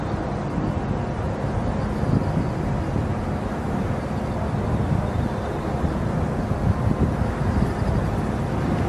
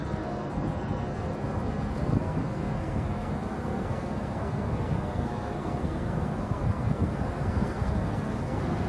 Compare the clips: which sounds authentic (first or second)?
first